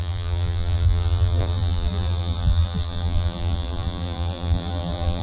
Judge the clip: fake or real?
fake